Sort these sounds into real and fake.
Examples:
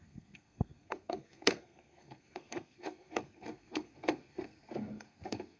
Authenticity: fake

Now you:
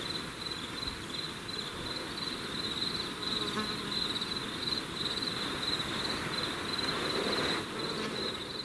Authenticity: real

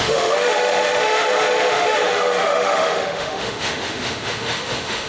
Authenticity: fake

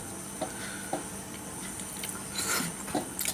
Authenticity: real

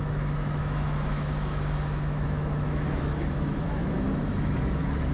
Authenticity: fake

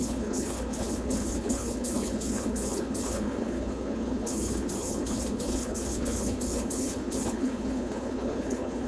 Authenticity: fake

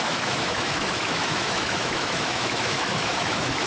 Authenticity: fake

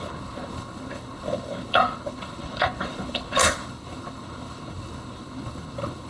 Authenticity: fake